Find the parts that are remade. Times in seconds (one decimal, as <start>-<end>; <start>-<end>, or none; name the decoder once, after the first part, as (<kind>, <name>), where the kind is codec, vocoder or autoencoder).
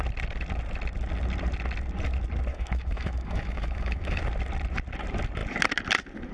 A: 2.5-4.2 (autoencoder, DAC-VAE)